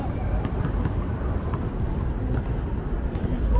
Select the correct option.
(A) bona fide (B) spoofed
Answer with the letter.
A